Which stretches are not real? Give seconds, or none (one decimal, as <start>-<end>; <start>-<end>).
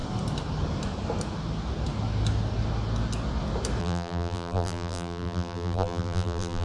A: 3.8-6.6